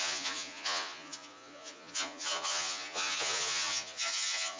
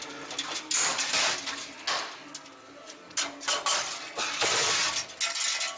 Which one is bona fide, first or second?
second